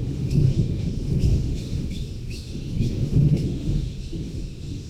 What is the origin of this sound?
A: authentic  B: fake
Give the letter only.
B